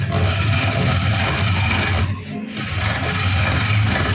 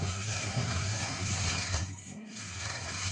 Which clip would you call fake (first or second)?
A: second